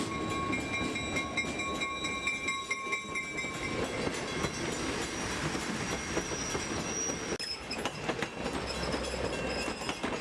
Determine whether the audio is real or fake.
real